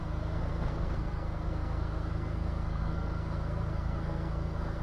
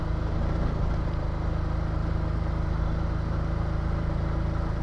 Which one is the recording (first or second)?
second